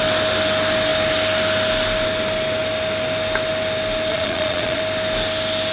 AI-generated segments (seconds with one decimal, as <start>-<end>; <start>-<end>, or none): 4.1-4.8